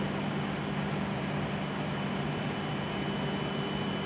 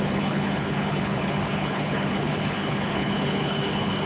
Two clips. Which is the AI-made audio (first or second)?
second